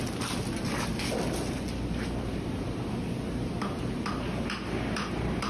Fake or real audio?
real